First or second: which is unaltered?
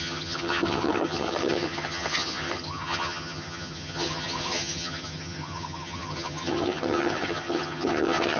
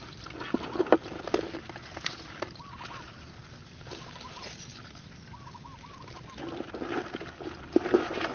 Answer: second